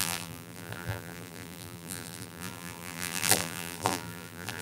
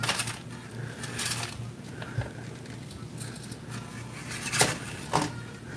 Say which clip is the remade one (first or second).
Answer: first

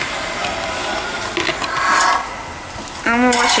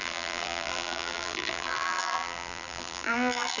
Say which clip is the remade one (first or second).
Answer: second